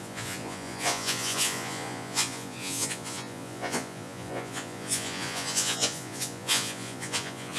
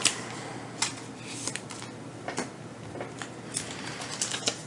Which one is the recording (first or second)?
second